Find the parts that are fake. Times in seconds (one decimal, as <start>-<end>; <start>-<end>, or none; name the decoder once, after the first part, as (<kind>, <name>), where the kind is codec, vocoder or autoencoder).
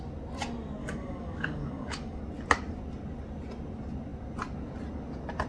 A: 0.8-2.2 (codec, DAC)